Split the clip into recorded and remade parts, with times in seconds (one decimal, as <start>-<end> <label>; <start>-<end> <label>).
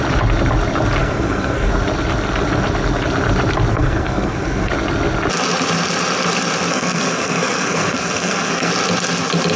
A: 0.0-1.0 recorded; 1.0-1.7 remade; 1.7-3.7 recorded; 3.7-4.7 remade; 4.7-6.7 recorded; 6.7-8.7 remade; 8.7-9.6 recorded